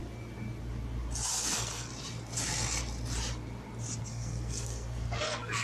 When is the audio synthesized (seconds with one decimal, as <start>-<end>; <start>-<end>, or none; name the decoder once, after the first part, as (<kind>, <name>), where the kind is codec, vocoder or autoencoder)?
1.3-1.9 (codec, SNAC); 4.0-5.6